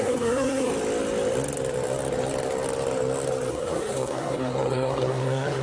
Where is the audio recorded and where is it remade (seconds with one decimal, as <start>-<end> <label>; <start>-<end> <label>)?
0.0-0.7 remade; 0.7-3.5 recorded; 3.5-5.6 remade